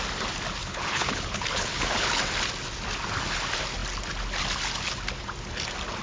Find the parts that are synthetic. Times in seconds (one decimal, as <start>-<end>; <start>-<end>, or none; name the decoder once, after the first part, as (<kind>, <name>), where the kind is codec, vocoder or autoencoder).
0.6-2.2 (codec, HILCodec)